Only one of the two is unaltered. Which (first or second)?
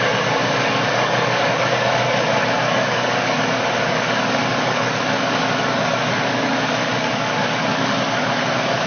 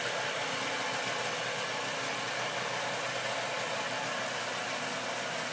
second